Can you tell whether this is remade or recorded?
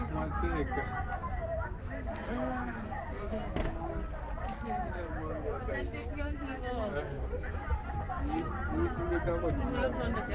recorded